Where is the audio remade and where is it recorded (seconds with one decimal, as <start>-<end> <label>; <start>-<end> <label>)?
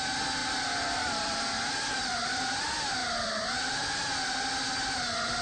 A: 0.0-0.4 recorded; 0.4-2.6 remade; 2.6-3.0 recorded; 3.0-4.4 remade; 4.4-5.4 recorded